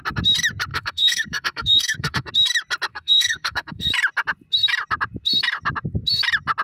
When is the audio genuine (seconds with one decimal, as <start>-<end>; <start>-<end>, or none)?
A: 0.0-0.7; 2.3-2.9; 3.9-6.6

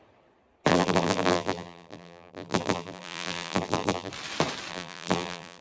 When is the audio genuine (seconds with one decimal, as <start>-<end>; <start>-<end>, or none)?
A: 0.0-0.7; 4.1-4.7

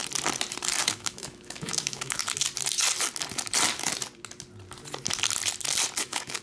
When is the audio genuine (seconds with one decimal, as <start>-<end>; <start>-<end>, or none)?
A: 0.0-0.8; 2.2-6.0